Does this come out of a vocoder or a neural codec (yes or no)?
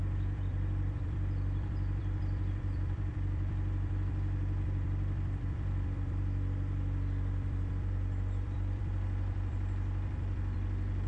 yes